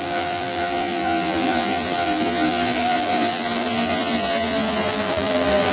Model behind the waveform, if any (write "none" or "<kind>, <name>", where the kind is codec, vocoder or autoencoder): vocoder, BigVGAN v2